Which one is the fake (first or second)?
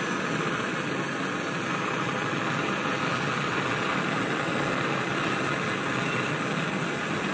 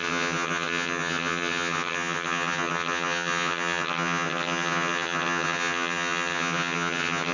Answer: second